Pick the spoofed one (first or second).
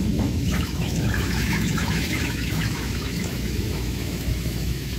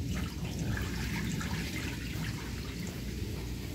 first